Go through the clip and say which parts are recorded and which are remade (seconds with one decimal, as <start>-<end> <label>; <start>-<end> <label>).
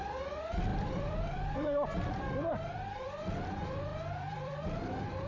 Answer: 0.0-0.7 recorded; 0.7-3.1 remade; 3.1-3.9 recorded; 3.9-5.3 remade